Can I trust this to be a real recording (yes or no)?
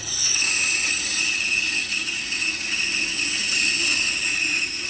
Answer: no